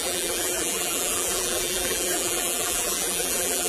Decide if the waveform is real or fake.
fake